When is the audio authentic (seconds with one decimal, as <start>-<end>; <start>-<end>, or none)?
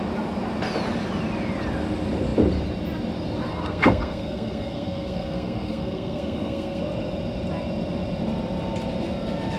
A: 0.0-3.5; 6.8-9.6